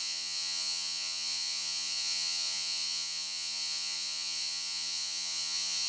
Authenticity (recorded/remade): remade